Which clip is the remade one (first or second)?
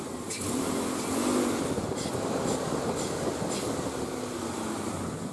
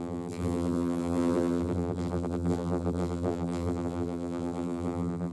second